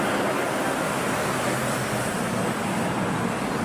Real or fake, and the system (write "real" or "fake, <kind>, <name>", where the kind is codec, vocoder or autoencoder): real